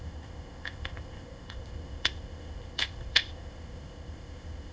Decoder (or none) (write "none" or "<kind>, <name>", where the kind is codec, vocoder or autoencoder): codec, ZipCodec